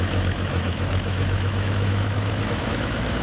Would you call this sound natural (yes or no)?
no